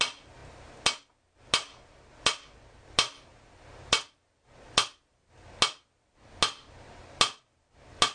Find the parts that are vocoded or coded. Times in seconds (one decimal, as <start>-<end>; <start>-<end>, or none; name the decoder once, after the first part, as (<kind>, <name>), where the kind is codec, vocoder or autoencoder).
none